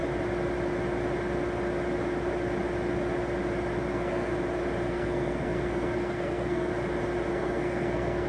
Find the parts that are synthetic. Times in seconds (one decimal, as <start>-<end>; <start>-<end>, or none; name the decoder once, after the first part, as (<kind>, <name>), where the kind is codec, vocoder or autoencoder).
3.9-4.3 (codec, SNAC); 4.9-6.7; 7.3-8.3